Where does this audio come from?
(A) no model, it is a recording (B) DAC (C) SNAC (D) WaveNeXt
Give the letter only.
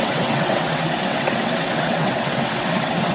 D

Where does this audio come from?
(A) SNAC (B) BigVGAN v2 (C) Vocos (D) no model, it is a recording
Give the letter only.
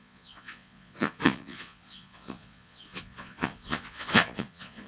C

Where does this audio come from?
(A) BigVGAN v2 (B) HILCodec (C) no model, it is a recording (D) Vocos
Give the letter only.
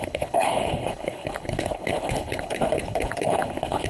B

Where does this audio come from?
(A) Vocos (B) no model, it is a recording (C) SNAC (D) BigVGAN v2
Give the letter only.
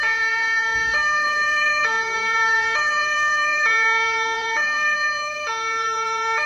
A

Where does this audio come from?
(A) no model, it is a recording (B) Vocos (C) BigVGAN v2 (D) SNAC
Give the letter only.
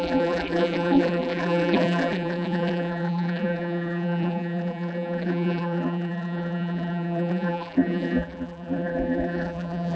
C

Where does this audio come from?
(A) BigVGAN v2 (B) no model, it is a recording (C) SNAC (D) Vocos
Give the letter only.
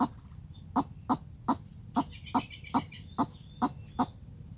B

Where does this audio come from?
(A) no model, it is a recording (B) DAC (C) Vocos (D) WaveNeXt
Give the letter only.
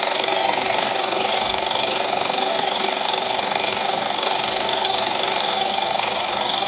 B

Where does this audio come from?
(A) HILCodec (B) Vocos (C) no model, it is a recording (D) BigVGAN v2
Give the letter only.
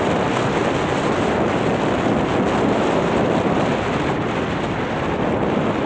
C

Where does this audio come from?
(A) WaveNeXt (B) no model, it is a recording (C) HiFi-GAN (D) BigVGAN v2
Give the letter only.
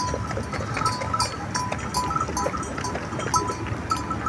B